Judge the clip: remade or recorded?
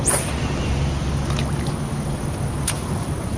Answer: recorded